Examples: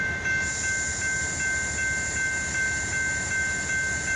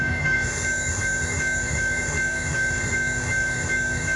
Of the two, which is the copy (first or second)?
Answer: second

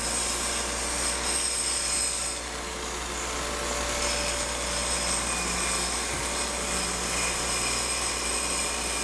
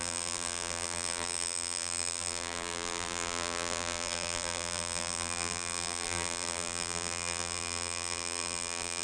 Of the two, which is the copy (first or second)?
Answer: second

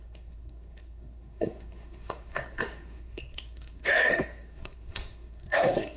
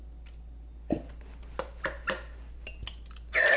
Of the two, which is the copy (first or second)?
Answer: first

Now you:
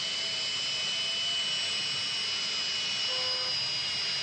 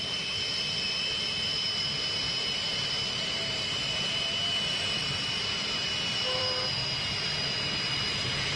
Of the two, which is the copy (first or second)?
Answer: second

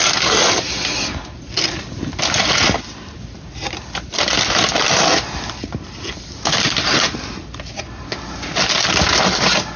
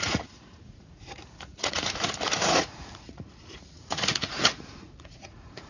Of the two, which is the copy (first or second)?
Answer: second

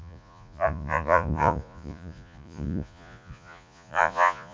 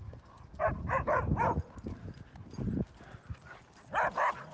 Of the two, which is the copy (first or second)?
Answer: first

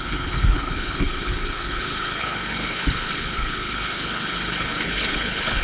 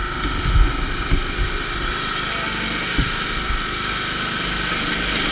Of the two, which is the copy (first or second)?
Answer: first